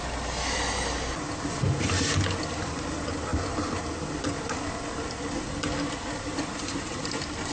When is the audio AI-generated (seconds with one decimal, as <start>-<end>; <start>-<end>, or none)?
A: 2.4-3.3; 6.1-7.5